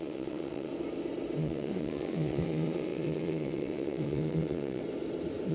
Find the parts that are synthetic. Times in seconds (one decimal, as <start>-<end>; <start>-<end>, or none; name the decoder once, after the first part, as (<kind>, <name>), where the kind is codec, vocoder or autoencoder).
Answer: 0.0-0.7 (vocoder, WaveNeXt); 1.4-4.8